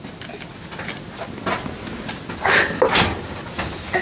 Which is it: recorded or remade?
recorded